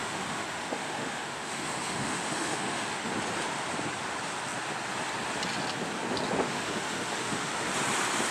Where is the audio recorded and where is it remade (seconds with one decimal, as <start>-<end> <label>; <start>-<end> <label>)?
0.0-3.1 remade; 3.1-6.5 recorded; 6.5-7.7 remade; 7.7-8.3 recorded